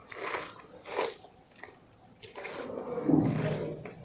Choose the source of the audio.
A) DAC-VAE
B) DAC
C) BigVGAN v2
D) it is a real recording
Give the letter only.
D